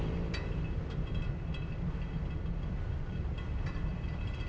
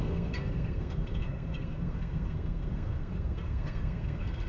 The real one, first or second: first